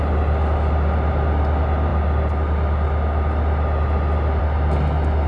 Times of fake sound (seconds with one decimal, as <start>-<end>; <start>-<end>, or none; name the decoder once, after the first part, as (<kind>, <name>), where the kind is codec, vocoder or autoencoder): none